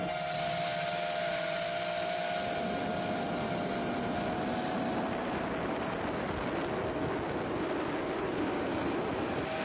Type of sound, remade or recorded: recorded